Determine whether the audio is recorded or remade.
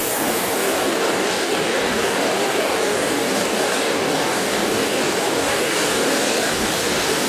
remade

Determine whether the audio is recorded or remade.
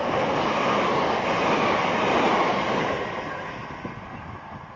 recorded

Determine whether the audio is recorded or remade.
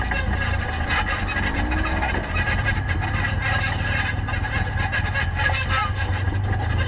recorded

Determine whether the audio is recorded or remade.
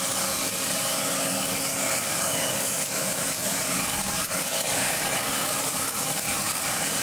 remade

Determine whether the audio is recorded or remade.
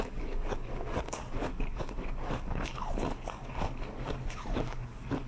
remade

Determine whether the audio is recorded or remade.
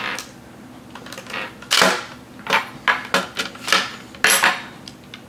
recorded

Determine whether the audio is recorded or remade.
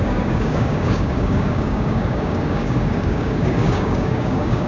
remade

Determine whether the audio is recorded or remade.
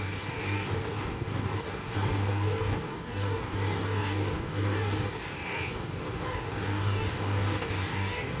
remade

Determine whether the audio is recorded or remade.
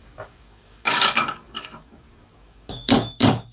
remade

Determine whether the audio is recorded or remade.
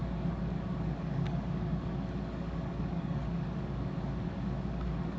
remade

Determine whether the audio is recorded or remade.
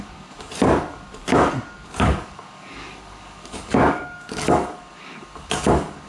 remade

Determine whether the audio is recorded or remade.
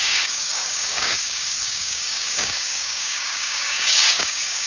remade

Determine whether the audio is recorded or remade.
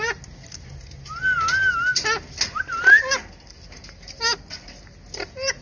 recorded